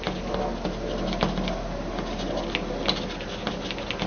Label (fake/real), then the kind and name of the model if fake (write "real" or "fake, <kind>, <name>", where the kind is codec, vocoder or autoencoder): real